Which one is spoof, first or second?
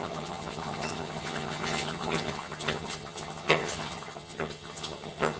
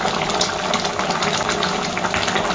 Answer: first